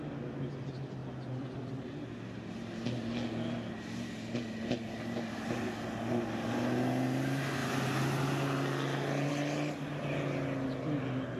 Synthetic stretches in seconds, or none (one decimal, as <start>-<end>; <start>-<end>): none